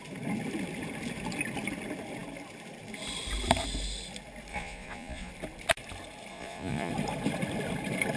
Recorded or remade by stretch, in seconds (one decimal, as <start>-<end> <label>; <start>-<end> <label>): 0.0-4.5 recorded; 4.5-5.3 remade; 5.3-6.3 recorded; 6.3-6.9 remade; 6.9-8.2 recorded